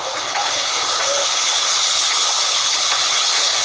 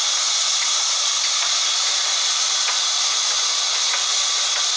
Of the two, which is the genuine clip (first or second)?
second